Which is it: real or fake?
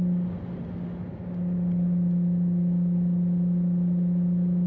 real